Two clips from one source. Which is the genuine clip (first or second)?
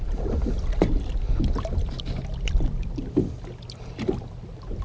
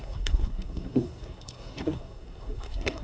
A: first